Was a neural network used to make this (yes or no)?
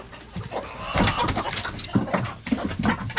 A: no